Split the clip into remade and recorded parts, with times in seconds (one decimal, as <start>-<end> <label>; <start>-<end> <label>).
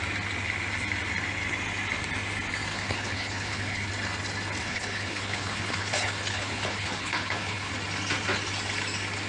0.0-2.7 recorded; 2.7-3.9 remade; 3.9-4.6 recorded; 4.6-7.7 remade; 7.7-9.3 recorded